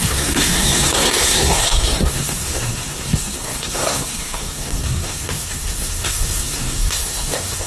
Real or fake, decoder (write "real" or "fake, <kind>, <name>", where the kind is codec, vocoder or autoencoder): fake, codec, SNAC